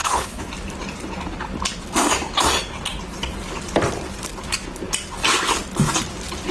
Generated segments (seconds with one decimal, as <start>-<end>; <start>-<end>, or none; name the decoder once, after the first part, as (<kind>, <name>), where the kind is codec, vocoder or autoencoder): 0.0-0.5 (codec, HILCodec)